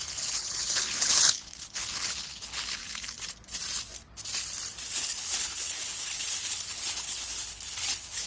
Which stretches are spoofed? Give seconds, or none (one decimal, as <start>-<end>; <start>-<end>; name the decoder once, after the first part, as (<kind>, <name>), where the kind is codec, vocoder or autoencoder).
0.0-2.8 (codec, HILCodec); 5.0-8.3